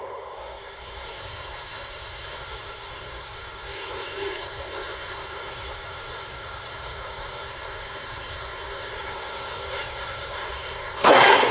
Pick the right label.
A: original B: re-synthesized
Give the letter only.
B